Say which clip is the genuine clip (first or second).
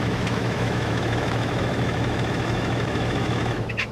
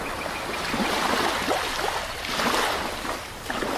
second